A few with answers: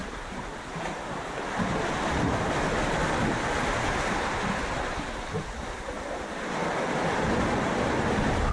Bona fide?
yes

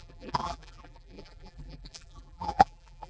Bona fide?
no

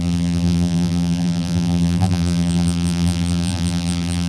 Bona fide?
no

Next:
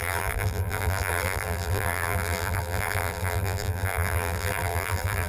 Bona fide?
no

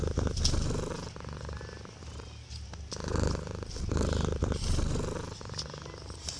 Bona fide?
yes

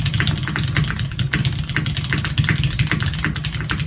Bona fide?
yes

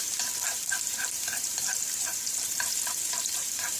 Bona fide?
no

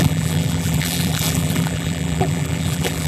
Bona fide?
no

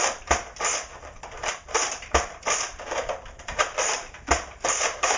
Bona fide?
no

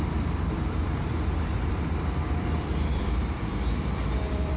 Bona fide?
no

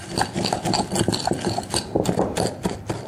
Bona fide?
yes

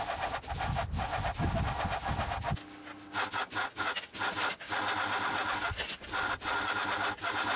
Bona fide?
yes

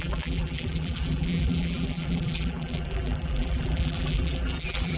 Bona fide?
no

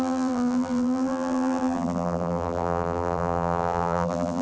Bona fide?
no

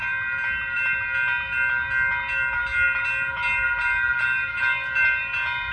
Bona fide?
yes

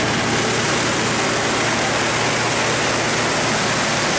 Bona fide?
yes